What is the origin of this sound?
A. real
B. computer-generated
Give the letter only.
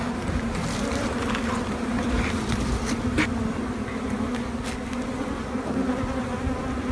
A